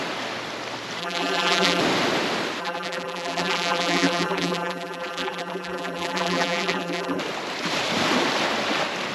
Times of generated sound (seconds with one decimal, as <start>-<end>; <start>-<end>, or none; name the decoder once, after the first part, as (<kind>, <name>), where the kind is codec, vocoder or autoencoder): 1.0-1.8 (vocoder, BigVGAN v2); 2.6-7.2